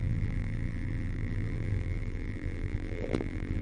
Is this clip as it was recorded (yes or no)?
no